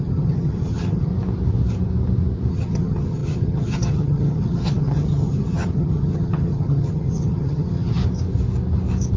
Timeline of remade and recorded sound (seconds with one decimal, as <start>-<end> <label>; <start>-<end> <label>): 0.0-1.1 remade; 1.1-2.5 recorded; 2.5-8.0 remade; 8.0-9.2 recorded